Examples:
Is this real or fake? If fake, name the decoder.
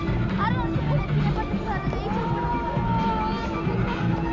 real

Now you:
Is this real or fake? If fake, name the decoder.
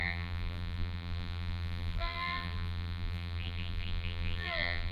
fake, vocoder, BigVGAN v2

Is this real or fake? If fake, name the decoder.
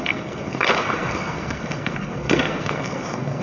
fake, codec, SNAC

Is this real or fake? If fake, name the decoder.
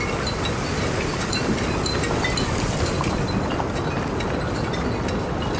real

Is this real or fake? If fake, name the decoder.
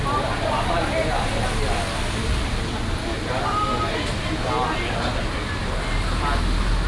real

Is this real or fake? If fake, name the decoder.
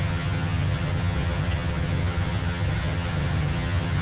fake, vocoder, HiFi-GAN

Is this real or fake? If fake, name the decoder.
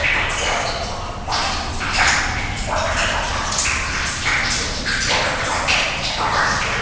real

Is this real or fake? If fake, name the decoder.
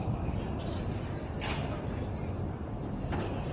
real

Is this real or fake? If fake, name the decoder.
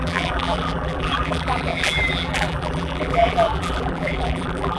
fake, vocoder, BigVGAN v2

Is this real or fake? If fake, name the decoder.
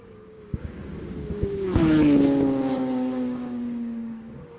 fake, codec, DAC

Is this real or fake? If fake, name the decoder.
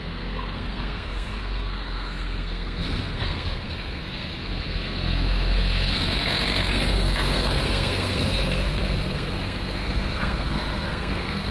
fake, codec, SNAC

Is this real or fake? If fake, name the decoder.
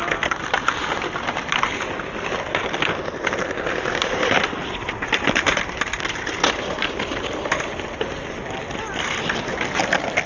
real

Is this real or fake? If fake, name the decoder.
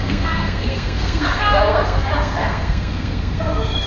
fake, codec, SNAC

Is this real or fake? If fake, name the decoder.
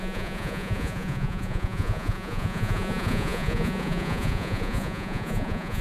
fake, vocoder, Vocos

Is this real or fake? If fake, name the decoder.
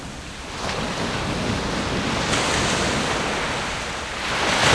real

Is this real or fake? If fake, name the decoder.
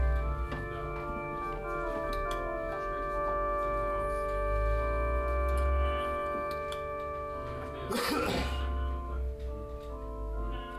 real